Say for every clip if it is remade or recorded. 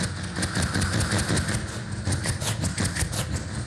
recorded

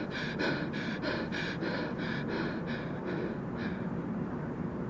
remade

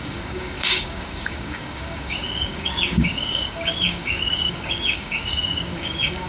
remade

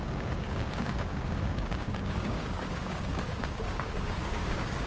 remade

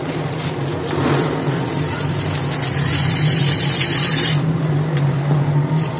recorded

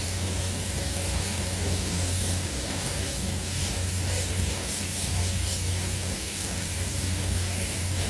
remade